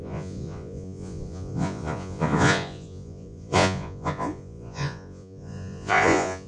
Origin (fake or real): fake